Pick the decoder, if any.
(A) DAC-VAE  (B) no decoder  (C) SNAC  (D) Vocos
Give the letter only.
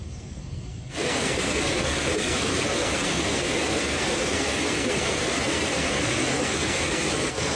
C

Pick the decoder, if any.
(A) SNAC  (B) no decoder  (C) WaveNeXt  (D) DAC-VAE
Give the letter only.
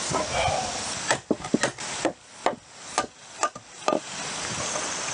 B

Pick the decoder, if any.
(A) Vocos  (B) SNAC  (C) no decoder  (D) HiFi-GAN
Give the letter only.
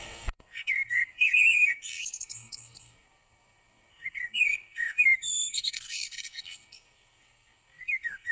B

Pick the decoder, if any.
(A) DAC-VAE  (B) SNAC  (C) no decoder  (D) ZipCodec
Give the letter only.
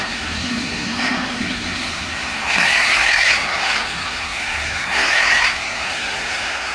B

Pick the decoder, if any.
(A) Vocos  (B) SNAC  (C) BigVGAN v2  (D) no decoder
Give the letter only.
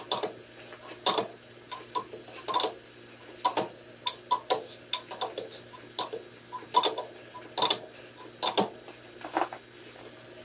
D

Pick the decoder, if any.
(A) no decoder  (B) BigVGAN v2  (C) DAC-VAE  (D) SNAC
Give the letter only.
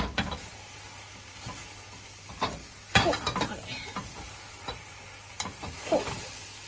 A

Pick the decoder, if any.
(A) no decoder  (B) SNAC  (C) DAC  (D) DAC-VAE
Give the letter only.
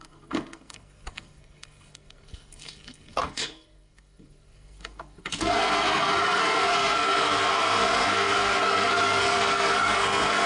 B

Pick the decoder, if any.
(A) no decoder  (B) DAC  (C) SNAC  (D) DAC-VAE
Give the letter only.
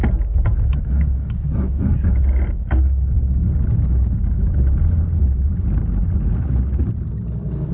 A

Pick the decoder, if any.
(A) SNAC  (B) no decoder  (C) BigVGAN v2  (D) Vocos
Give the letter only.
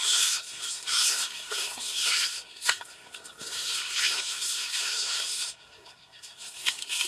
A